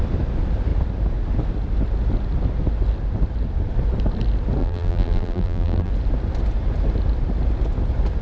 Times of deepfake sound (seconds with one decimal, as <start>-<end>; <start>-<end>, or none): 4.6-5.9